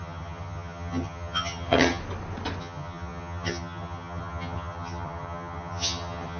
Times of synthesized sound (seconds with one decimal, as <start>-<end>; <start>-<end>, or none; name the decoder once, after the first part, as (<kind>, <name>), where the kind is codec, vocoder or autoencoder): 0.0-2.0 (vocoder, HiFi-GAN); 2.6-6.4